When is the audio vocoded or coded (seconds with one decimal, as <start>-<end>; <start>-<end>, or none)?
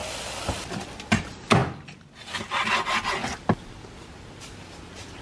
none